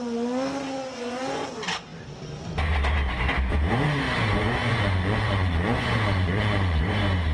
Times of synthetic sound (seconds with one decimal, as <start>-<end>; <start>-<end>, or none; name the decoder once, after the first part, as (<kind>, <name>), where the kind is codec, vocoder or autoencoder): 0.9-1.5 (vocoder, Vocos); 4.6-6.8